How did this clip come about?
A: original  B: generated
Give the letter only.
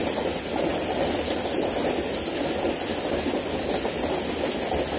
A